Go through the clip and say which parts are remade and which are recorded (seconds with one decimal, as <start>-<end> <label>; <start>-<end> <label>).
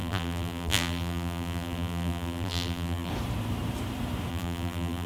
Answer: 0.0-3.1 remade; 3.1-4.3 recorded; 4.3-5.1 remade